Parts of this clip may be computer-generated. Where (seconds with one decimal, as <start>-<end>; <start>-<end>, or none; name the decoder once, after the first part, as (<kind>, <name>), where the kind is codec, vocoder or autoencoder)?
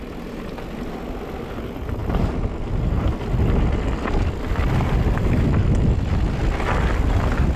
none